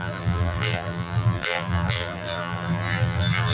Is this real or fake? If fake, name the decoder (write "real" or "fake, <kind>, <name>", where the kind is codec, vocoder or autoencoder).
fake, vocoder, BigVGAN v2